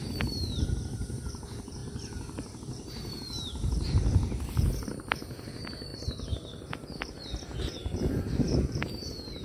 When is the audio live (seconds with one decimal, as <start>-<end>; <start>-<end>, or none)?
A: 0.0-7.8